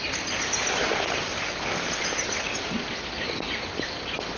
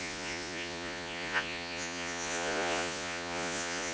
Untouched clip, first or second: first